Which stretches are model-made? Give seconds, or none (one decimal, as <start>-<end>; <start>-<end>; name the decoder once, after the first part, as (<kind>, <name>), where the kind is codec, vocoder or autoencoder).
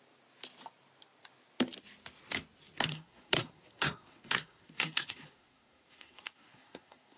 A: 2.9-7.2 (codec, SNAC)